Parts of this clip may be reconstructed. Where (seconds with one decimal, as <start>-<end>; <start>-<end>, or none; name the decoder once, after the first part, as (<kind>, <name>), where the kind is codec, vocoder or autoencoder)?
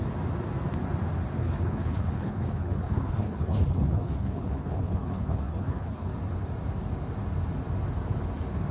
1.4-6.1 (codec, HILCodec)